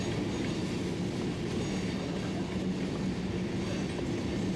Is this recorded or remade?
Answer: recorded